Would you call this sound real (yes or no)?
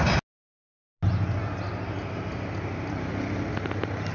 yes